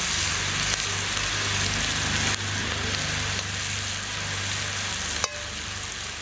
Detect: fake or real real